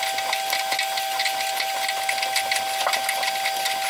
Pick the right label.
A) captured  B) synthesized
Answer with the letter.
A